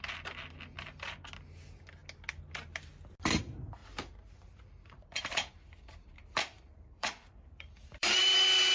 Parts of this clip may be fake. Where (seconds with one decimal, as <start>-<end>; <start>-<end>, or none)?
3.8-8.2